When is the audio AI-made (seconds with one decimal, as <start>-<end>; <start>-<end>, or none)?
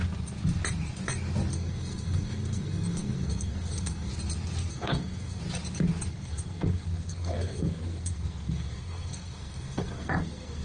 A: 1.5-4.1; 4.7-5.4; 6.1-10.6